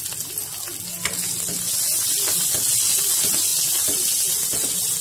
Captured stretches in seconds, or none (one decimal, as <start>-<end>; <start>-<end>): 0.0-5.0

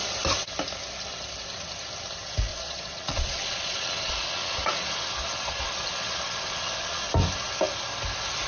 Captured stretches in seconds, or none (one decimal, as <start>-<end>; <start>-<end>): 0.0-2.5; 7.1-8.5

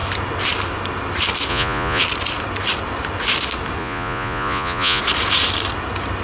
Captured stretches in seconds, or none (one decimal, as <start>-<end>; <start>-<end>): 0.0-1.5; 2.0-3.8; 5.0-6.2

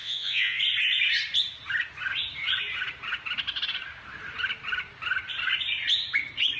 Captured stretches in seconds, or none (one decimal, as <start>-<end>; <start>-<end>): 0.6-6.6

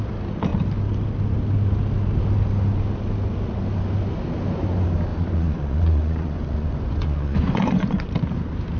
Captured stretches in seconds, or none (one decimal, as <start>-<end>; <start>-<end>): 0.0-5.1; 8.1-8.8

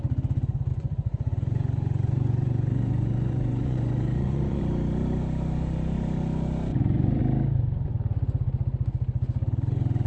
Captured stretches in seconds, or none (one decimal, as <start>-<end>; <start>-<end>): 0.0-0.7; 4.6-6.7; 7.2-10.1

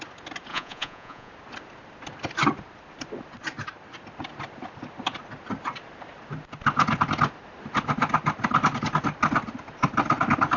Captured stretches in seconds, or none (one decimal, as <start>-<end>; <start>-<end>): 0.0-0.5; 1.3-10.6